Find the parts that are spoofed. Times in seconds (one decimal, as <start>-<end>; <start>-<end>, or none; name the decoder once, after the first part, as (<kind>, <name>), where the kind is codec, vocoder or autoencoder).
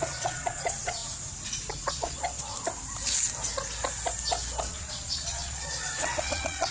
0.0-1.0 (vocoder, Vocos); 1.9-2.5; 4.7-6.7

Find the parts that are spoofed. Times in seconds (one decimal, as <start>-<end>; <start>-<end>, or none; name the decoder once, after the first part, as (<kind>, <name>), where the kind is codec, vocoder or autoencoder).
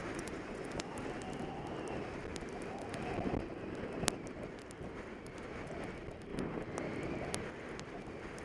0.0-0.9 (vocoder, Vocos)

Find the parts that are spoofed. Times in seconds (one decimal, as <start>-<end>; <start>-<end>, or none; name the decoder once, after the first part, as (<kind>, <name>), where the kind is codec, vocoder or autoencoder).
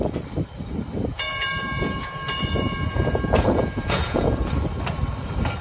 1.1-4.5 (vocoder, Vocos)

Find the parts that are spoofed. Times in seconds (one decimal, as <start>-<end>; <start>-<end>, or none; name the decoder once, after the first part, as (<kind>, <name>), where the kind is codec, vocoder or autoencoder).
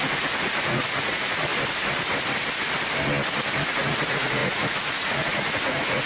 0.0-1.5 (vocoder, Vocos); 3.5-6.1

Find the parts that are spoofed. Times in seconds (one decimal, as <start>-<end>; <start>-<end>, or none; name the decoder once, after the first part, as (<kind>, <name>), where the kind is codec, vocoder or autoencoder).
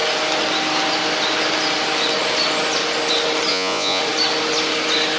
3.5-4.0 (vocoder, Vocos)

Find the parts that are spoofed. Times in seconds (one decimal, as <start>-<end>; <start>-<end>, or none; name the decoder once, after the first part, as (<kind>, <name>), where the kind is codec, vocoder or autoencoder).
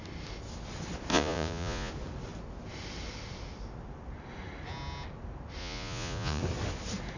1.1-1.9 (vocoder, Vocos); 5.6-6.4